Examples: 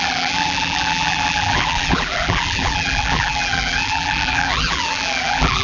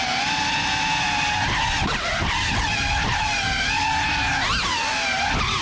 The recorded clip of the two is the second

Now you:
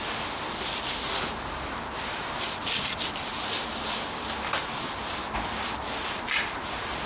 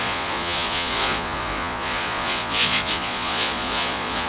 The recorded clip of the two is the first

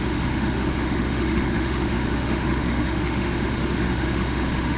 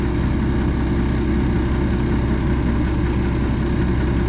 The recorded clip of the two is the second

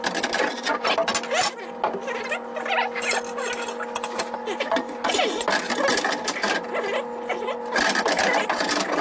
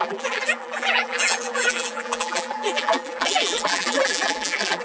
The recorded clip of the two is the first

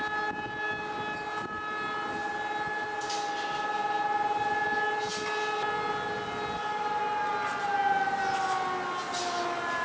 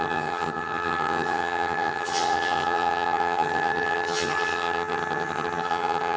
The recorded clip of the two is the first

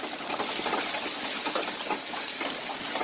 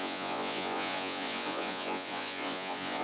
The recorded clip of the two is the first